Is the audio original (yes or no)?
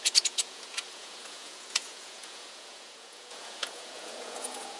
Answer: no